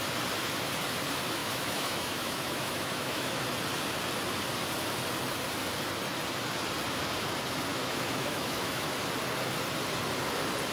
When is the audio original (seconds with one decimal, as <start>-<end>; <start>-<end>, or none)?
0.0-1.4; 3.4-7.7; 8.9-10.7

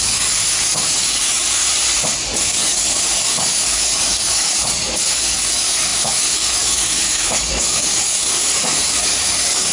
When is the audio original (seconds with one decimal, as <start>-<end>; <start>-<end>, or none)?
1.6-2.4

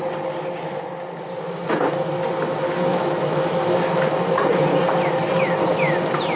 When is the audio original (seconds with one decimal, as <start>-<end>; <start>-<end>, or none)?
0.0-2.9; 3.6-6.4

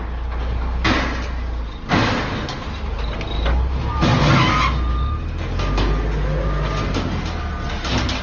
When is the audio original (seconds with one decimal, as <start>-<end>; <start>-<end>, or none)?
0.0-8.2

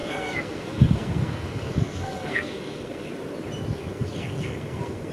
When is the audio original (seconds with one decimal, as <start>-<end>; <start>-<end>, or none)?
3.1-3.7

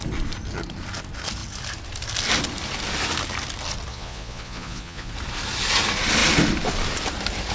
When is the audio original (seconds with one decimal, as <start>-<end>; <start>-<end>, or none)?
0.0-3.9; 5.1-7.5